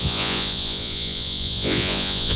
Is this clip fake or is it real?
fake